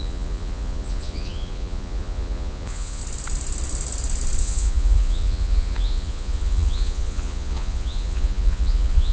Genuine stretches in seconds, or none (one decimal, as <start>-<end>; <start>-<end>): 3.0-4.4